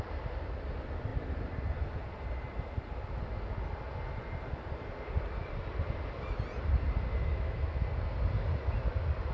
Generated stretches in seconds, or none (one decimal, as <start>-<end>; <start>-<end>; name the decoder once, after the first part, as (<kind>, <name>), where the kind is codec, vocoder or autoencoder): 7.2-7.8 (autoencoder, DAC-VAE)